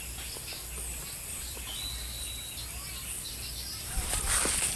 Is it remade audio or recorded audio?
recorded